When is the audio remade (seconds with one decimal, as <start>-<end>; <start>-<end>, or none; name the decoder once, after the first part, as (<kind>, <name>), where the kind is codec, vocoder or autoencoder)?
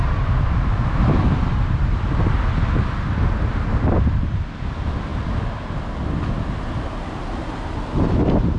none